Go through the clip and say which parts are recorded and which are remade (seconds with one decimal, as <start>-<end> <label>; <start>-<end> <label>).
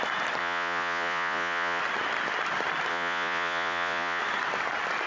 0.0-0.4 recorded; 0.4-1.8 remade; 1.8-2.9 recorded; 2.9-4.2 remade; 4.2-5.1 recorded